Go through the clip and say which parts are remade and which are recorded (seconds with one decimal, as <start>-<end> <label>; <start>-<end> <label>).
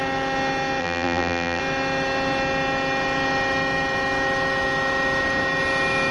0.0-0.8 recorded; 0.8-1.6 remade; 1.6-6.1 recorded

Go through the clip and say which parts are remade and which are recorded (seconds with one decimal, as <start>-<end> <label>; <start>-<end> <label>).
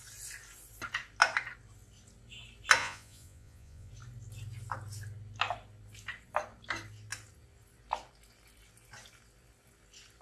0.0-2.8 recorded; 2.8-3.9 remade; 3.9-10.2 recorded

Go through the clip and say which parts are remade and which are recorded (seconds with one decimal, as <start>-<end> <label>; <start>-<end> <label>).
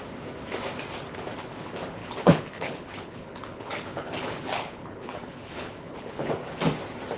0.0-2.0 recorded; 2.0-6.3 remade; 6.3-7.2 recorded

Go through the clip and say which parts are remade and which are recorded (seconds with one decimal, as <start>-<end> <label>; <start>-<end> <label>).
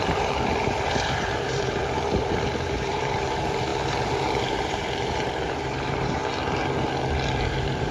0.0-6.2 remade; 6.2-7.3 recorded; 7.3-7.9 remade